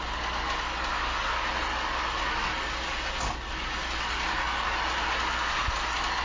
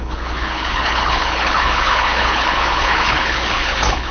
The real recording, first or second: first